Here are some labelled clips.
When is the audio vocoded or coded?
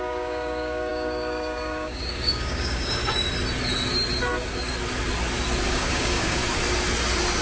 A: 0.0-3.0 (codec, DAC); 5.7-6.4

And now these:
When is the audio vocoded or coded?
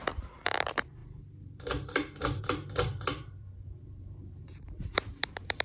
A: 0.0-5.6 (vocoder, BigVGAN v2)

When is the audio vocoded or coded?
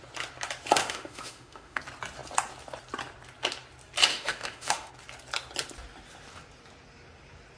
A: 0.8-1.8 (autoencoder, DAC-VAE); 4.1-4.9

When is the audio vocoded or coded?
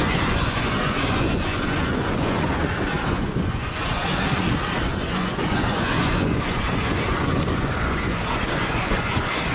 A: 0.0-4.1 (vocoder, Vocos); 4.8-9.5